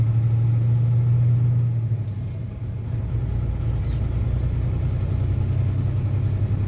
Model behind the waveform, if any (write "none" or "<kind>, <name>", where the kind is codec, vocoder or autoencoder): none